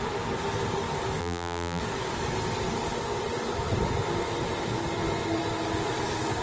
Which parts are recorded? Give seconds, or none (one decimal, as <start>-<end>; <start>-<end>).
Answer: 0.0-1.2; 1.8-6.4